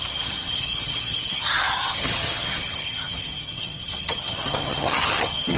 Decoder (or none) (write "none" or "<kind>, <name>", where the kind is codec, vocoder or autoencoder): vocoder, HiFi-GAN